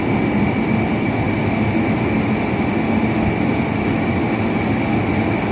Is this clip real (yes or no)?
yes